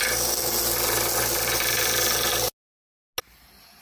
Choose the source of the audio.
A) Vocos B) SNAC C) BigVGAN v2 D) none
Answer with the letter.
D